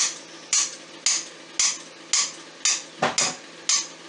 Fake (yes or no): no